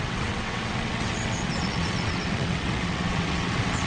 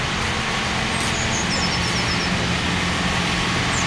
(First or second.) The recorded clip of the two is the second